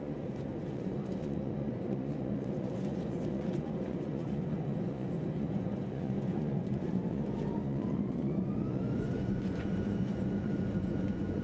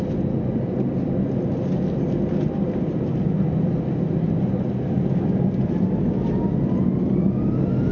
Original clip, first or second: second